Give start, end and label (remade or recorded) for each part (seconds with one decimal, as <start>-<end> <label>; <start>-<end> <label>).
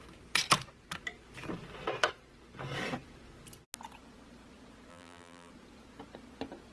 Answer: 0.0-4.9 recorded; 4.9-5.5 remade; 5.5-6.7 recorded